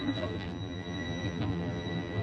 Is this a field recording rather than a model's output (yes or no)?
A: no